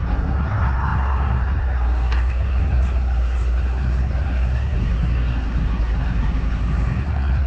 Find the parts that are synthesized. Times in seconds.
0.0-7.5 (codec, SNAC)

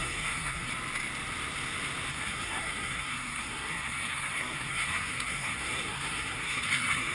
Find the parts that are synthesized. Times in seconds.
0.0-0.7 (codec, SNAC); 2.1-7.1

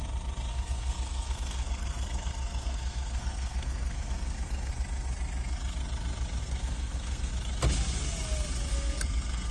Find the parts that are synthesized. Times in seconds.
0.5-4.7 (codec, SNAC); 6.4-7.3; 8.7-9.5

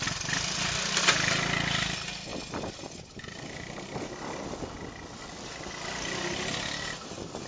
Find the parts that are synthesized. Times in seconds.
none